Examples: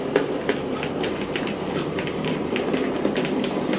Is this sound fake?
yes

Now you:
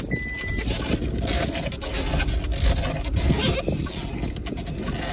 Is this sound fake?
no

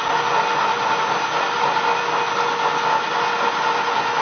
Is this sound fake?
no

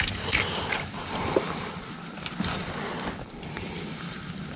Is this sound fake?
yes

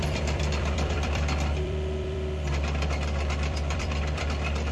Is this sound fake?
yes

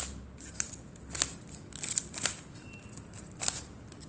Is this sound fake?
no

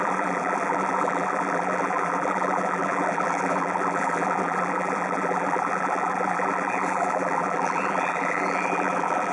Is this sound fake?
yes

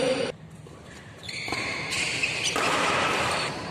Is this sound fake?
yes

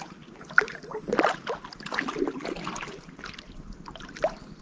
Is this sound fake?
no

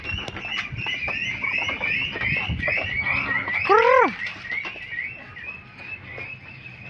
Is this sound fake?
no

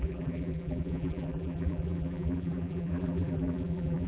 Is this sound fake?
yes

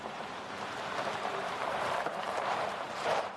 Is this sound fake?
yes